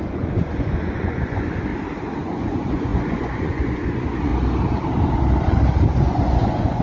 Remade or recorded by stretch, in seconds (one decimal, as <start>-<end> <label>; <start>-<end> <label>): 0.0-1.7 remade; 1.7-2.2 recorded; 2.2-4.3 remade; 4.3-6.0 recorded; 6.0-6.8 remade